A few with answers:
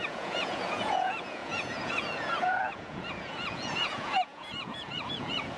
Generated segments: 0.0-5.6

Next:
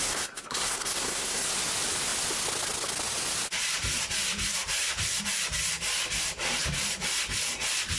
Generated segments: 0.0-1.5

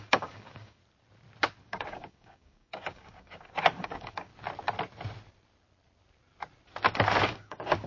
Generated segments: 0.0-0.8; 1.6-4.3; 7.2-7.9

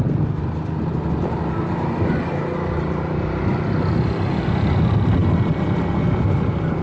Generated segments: none

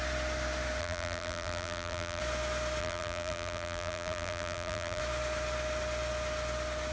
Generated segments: 0.8-2.2; 2.8-5.0

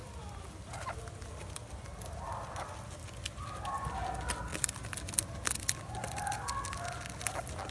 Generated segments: none

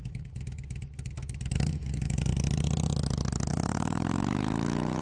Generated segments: 0.0-2.3; 3.5-5.0